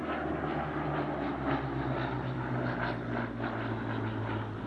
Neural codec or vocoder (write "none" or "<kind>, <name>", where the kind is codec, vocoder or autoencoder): none